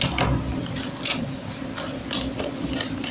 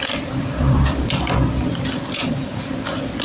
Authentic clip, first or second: first